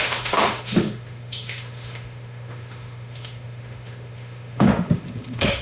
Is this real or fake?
fake